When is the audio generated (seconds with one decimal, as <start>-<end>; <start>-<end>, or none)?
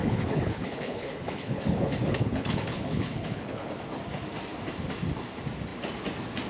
0.0-3.7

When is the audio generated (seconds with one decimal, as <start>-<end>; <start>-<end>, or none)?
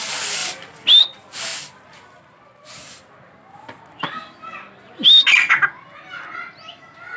none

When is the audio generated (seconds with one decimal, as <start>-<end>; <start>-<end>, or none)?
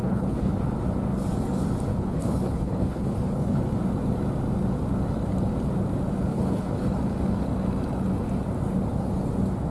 0.0-0.5; 1.9-3.6; 6.3-7.0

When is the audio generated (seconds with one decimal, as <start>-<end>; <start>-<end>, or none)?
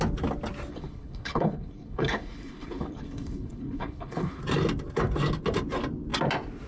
0.7-4.4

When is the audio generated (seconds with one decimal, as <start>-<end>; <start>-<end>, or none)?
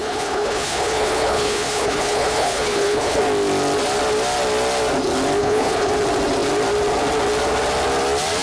0.0-3.2; 5.4-5.9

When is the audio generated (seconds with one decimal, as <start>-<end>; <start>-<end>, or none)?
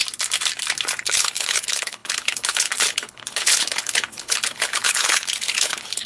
1.0-6.1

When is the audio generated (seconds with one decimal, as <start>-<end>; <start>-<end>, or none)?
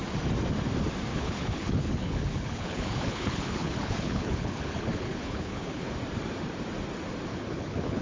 1.1-5.9; 7.3-8.0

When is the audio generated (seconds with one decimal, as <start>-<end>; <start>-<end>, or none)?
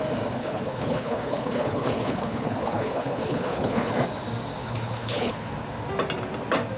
0.4-3.9; 4.6-5.5